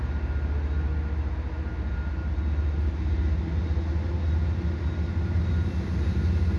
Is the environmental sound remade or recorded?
recorded